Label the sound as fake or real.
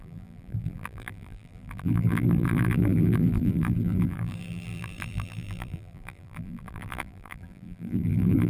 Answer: fake